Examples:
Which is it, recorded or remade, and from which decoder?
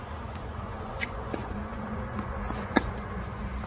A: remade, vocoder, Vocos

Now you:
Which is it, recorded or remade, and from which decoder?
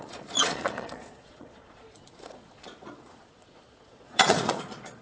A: remade, vocoder, Vocos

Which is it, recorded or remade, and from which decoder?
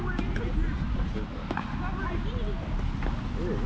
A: recorded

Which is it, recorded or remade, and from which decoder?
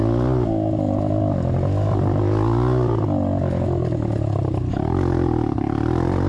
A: recorded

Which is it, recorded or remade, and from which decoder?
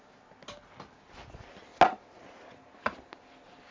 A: recorded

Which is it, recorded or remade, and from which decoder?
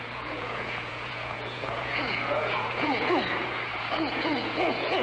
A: remade, vocoder, Vocos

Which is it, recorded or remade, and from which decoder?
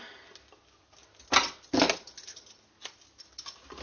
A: recorded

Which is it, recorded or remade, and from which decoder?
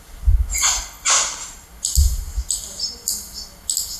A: recorded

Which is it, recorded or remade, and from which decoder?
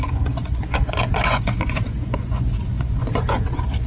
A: remade, vocoder, Vocos